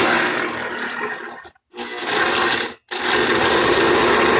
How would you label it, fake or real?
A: real